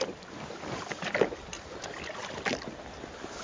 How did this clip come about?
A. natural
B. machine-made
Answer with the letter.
A